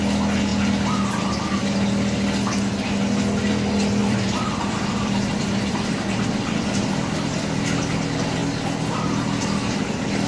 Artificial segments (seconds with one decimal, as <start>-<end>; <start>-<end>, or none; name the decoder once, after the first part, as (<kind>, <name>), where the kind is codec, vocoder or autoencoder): 4.0-7.8 (vocoder, BigVGAN v2)